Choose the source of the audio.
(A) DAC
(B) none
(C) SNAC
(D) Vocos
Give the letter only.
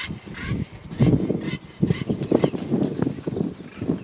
B